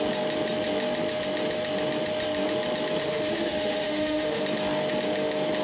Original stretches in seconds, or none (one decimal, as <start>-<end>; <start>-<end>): 0.0-3.0; 4.4-5.6